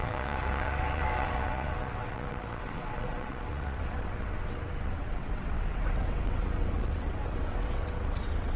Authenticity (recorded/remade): remade